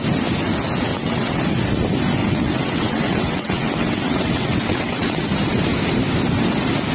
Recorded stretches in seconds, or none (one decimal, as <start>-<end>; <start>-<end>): 0.0-0.9; 1.4-2.2; 5.3-6.9